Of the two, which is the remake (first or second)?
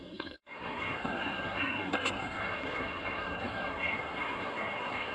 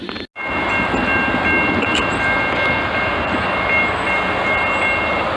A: first